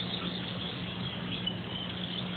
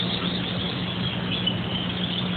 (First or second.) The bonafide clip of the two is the second